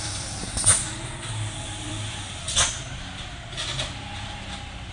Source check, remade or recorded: remade